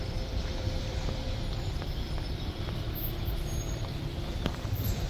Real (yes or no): no